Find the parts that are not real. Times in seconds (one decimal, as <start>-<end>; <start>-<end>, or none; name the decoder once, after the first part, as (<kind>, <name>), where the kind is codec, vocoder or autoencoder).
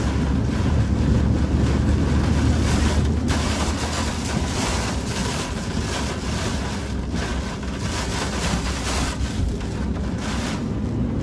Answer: none